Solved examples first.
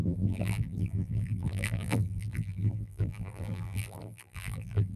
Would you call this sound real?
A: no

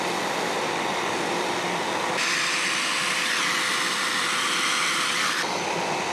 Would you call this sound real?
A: yes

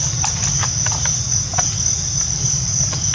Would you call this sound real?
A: yes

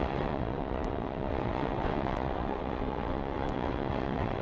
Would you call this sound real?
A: no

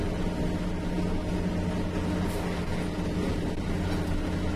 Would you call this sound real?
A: yes